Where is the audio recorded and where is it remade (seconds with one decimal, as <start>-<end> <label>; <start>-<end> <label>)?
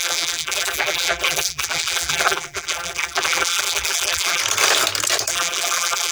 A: 0.0-4.4 remade; 4.4-5.3 recorded; 5.3-6.1 remade